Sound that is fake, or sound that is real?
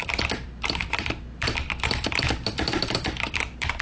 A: fake